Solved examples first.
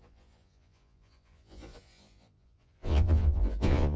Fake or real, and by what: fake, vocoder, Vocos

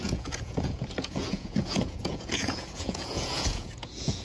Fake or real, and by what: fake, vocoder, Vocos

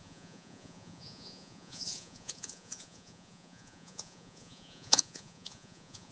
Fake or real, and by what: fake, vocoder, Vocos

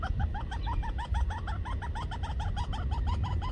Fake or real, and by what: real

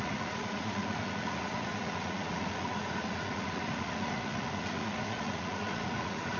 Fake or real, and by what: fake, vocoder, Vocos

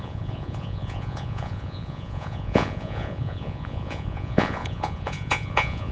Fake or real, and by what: fake, vocoder, Vocos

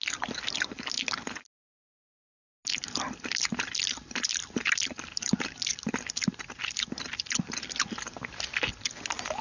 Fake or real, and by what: real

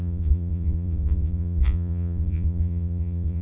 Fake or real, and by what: fake, vocoder, Vocos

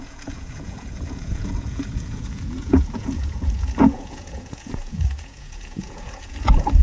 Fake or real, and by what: fake, vocoder, Vocos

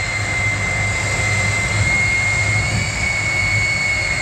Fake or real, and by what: real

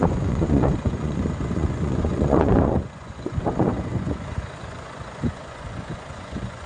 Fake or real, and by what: fake, vocoder, Vocos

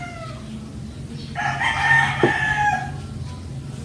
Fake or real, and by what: real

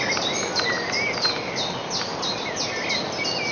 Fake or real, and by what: real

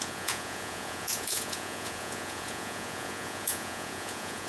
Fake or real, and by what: fake, vocoder, Vocos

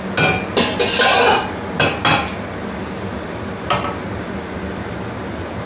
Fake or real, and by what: real